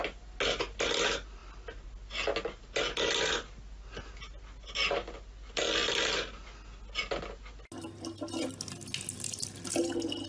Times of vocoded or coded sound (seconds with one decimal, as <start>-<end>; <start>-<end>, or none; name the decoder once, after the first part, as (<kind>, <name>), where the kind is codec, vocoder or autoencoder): none